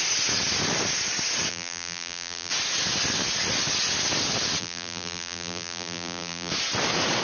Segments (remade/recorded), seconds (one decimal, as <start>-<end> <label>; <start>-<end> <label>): 0.0-1.5 recorded; 1.5-2.5 remade; 2.5-4.6 recorded; 4.6-6.5 remade; 6.5-7.2 recorded